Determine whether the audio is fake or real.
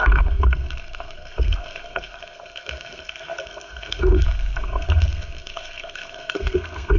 fake